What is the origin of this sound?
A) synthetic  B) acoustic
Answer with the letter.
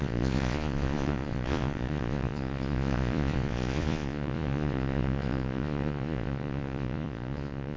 A